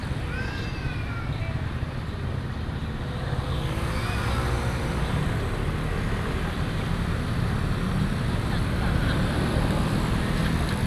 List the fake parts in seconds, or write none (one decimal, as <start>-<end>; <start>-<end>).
none